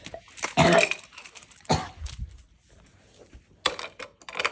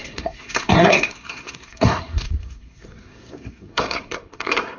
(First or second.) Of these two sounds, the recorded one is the first